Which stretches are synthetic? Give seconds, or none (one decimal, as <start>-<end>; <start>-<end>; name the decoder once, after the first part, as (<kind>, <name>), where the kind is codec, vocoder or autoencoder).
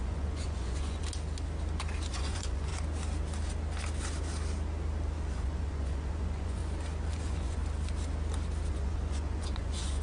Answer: 0.0-1.0 (vocoder, Vocos); 2.1-2.7; 5.3-6.6; 7.1-7.6; 8.7-10.0